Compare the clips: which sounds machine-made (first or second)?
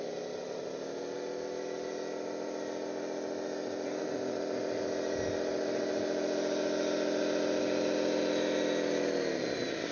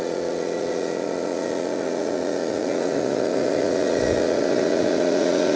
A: second